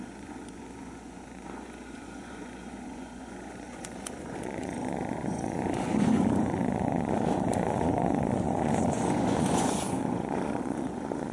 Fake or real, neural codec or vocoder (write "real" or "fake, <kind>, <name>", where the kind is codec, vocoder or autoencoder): fake, vocoder, Vocos